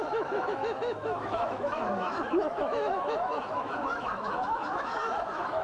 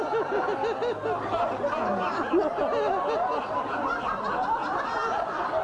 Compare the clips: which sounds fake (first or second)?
first